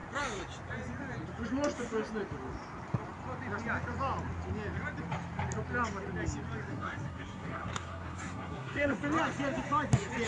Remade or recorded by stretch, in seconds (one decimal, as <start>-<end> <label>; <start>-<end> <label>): 0.0-6.7 recorded; 6.7-9.0 remade; 9.0-10.3 recorded